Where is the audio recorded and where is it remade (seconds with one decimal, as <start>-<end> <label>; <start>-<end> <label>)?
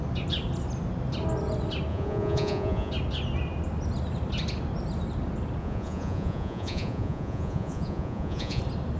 0.0-1.9 recorded; 1.9-2.9 remade; 2.9-5.6 recorded; 5.6-8.6 remade; 8.6-9.0 recorded